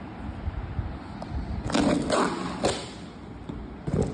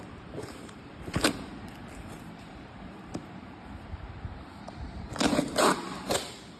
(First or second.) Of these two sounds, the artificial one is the second